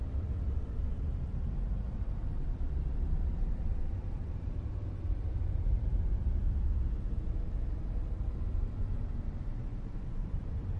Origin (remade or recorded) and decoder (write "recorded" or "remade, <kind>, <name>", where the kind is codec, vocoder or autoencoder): remade, vocoder, BigVGAN v2